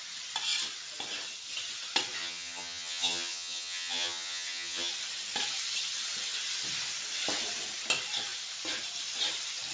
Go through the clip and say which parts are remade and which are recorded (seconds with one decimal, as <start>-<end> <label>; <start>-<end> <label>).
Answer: 0.0-2.2 recorded; 2.2-4.9 remade; 4.9-9.7 recorded